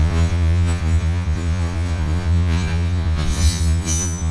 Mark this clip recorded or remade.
remade